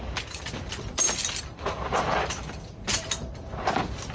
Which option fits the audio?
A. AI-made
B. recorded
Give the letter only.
B